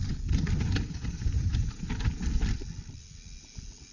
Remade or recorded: recorded